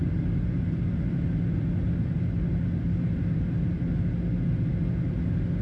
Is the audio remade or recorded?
recorded